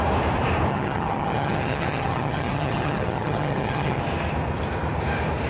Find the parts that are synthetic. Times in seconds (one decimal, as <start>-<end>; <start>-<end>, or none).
0.7-4.0